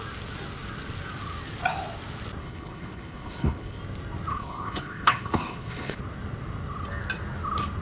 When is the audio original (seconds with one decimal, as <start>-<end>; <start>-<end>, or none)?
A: 0.0-2.4; 3.8-4.3; 6.0-7.8